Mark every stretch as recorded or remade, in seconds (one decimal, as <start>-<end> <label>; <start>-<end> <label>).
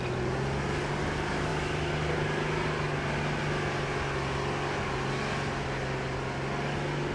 0.0-7.1 recorded